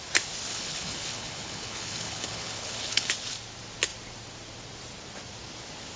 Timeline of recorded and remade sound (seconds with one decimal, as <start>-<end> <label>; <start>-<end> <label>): 0.0-0.5 recorded; 0.5-3.1 remade; 3.1-6.0 recorded